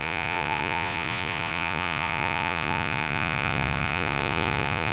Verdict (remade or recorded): remade